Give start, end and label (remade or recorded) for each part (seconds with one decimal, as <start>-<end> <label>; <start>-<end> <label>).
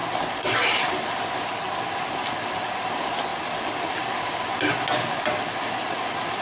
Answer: 0.0-6.4 recorded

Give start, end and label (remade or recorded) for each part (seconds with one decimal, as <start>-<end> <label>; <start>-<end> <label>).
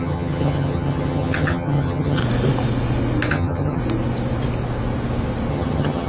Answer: 0.0-2.2 remade; 2.2-3.3 recorded; 3.3-3.8 remade; 3.8-5.5 recorded; 5.5-6.1 remade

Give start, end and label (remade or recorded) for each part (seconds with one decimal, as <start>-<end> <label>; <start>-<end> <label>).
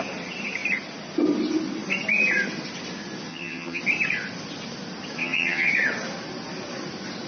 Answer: 0.0-3.3 recorded; 3.3-3.8 remade; 3.8-5.2 recorded; 5.2-5.7 remade; 5.7-7.3 recorded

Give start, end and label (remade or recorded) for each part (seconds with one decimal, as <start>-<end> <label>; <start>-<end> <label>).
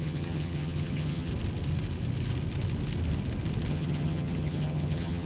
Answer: 0.0-1.3 remade; 1.3-3.7 recorded; 3.7-5.3 remade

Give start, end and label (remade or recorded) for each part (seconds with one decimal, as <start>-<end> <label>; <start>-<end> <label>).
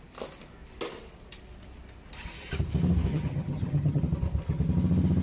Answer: 0.0-3.1 recorded; 3.1-4.0 remade; 4.0-5.2 recorded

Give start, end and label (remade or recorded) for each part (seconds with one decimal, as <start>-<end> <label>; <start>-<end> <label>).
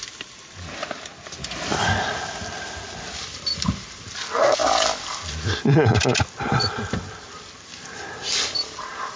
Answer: 0.0-9.2 recorded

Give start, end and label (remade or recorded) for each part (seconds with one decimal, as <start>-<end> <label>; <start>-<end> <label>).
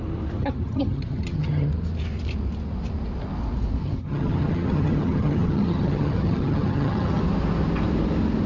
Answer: 0.0-0.4 recorded; 0.4-1.7 remade; 1.7-3.8 recorded; 3.8-7.2 remade; 7.2-8.5 recorded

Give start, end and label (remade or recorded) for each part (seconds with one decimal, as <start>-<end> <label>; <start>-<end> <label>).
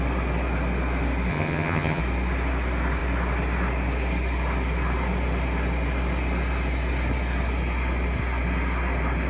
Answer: 0.0-1.3 recorded; 1.3-2.0 remade; 2.0-9.3 recorded